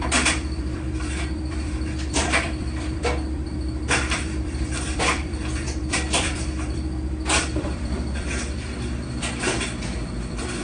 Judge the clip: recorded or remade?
remade